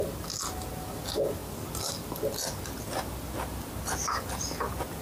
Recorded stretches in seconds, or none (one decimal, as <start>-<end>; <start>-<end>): 0.0-5.0